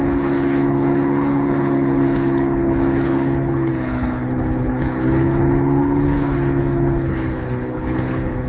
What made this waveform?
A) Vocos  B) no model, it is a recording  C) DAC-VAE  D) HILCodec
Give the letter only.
D